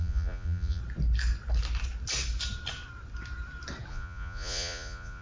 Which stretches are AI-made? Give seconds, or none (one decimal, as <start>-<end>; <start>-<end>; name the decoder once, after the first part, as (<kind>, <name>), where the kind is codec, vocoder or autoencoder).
0.0-0.8 (vocoder, Vocos); 3.9-5.2